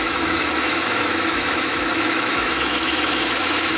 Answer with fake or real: fake